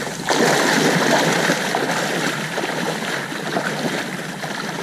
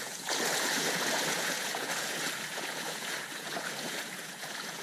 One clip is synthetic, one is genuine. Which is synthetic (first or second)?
second